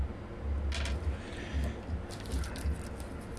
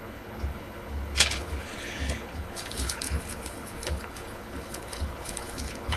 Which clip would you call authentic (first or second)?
first